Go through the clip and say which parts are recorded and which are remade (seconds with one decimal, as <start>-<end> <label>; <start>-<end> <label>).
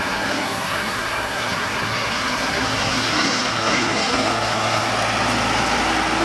0.0-4.9 remade; 4.9-6.2 recorded